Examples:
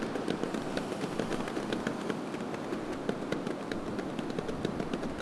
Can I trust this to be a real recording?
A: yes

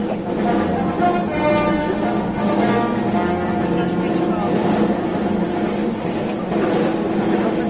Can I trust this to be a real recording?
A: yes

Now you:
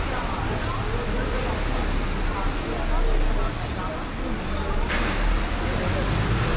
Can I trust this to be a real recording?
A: yes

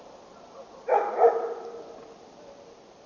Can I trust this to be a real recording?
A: yes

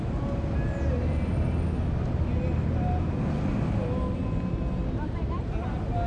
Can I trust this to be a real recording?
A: yes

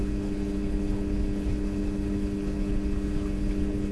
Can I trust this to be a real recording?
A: no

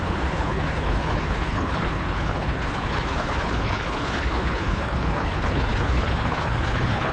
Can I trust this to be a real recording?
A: no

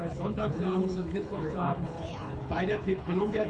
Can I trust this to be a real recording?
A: no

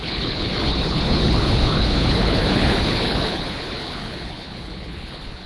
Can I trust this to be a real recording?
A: no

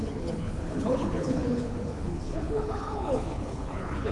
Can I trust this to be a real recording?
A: no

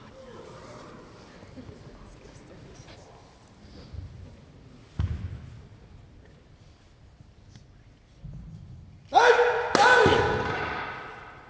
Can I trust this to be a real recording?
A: yes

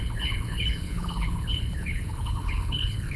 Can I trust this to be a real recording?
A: no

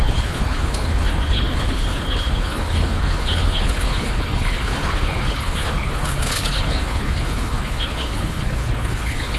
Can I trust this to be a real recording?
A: no